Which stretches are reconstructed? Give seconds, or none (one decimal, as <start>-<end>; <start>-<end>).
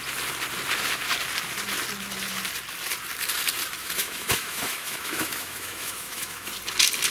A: 3.8-6.5